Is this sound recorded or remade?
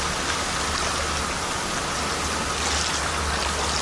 recorded